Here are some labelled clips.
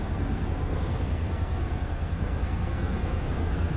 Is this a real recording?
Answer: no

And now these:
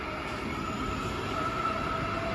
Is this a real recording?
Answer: yes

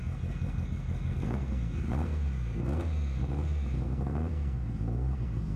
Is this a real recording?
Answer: no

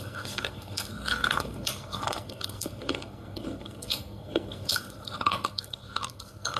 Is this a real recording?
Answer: no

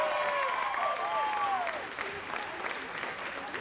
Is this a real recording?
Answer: yes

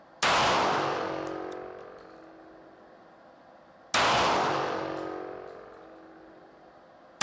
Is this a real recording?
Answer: yes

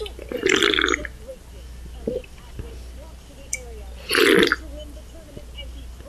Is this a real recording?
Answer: yes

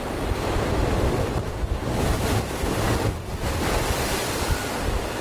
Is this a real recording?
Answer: yes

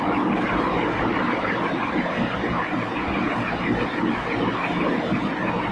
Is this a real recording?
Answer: yes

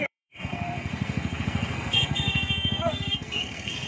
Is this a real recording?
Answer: no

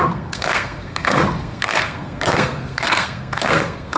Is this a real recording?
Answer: no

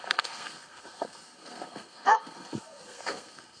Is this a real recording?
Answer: no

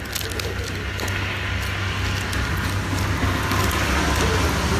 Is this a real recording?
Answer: yes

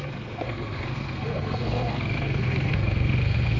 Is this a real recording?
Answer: no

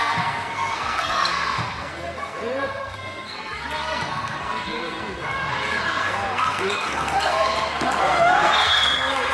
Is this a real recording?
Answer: no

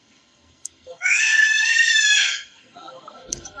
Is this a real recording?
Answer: no